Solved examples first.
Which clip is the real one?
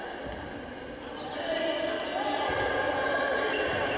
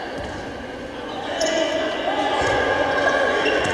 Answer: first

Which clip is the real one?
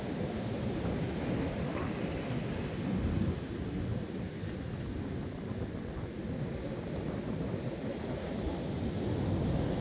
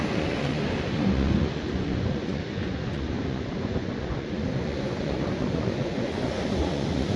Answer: first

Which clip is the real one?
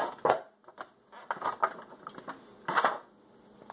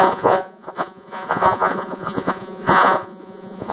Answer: first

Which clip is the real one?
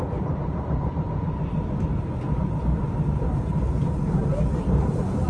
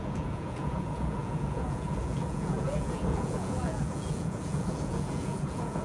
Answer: first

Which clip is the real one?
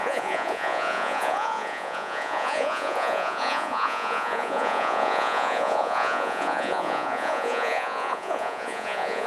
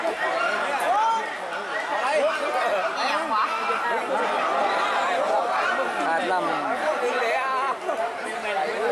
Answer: second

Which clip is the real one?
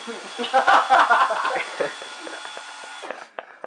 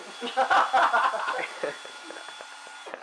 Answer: second